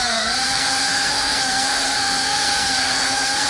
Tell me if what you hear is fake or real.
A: fake